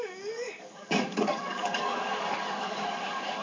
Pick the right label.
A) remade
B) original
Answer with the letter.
A